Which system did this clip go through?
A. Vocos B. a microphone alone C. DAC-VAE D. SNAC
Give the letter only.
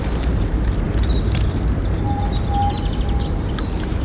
B